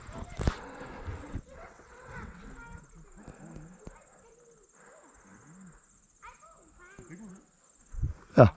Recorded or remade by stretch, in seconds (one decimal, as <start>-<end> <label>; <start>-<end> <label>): 0.0-1.1 recorded; 1.1-2.4 remade; 2.4-8.6 recorded